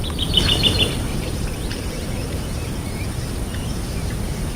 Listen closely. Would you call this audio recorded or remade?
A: remade